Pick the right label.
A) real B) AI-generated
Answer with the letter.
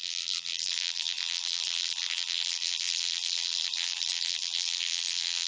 B